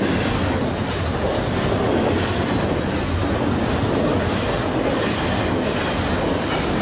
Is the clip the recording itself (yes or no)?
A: yes